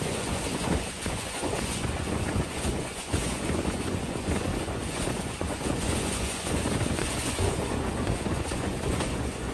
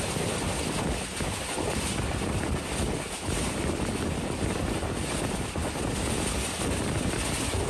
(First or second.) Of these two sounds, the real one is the second